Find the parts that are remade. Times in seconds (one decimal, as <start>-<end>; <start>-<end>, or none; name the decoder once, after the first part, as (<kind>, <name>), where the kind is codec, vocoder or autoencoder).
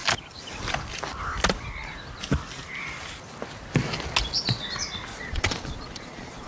5.1-6.5 (vocoder, Vocos)